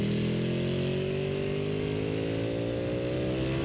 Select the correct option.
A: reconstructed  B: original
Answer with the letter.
B